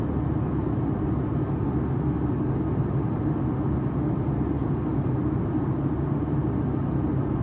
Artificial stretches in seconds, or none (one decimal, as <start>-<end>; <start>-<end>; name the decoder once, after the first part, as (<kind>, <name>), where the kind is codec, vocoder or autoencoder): none